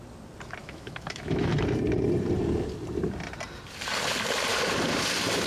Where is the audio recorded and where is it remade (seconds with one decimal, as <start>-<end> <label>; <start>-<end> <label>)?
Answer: 0.0-0.6 recorded; 0.6-1.5 remade; 1.5-5.5 recorded